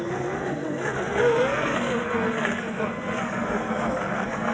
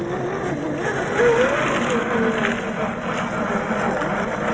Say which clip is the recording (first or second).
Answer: second